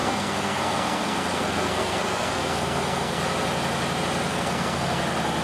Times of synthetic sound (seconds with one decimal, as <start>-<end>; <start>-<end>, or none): 0.0-3.2; 4.3-5.0